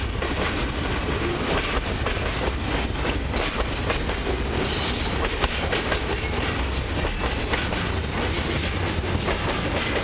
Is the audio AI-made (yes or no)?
no